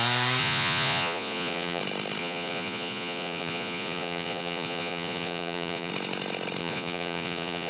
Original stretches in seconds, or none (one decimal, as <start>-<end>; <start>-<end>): 0.0-0.4; 1.8-2.2; 5.9-6.6